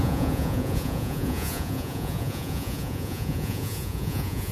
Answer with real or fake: fake